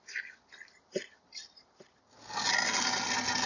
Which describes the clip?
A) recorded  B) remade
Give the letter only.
A